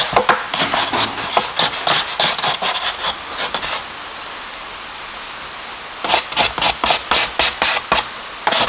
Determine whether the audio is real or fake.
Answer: real